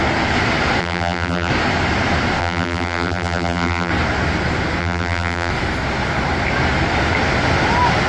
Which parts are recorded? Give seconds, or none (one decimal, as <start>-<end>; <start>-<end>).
0.0-0.8; 1.5-2.4; 3.9-4.8; 5.5-8.1